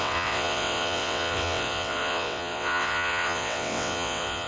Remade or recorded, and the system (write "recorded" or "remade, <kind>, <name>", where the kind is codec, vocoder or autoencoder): remade, vocoder, WaveNeXt